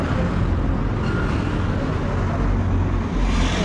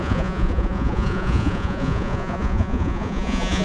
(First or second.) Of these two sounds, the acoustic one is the first